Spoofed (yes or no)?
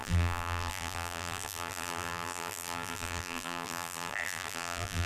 yes